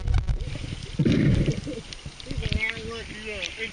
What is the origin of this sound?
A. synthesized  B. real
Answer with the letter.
B